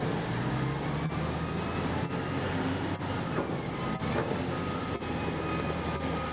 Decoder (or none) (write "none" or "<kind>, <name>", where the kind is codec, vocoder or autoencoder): none